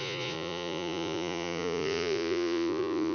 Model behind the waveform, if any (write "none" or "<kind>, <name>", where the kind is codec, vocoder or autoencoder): vocoder, Vocos